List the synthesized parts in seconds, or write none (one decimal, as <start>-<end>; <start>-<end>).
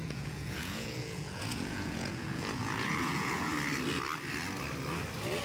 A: 0.0-3.5